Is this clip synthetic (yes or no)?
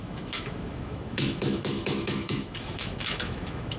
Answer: yes